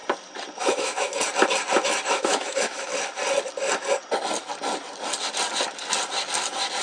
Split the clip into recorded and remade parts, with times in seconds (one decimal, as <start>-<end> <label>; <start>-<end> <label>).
0.0-0.6 recorded; 0.6-1.1 remade; 1.1-2.1 recorded; 2.1-2.9 remade; 2.9-6.8 recorded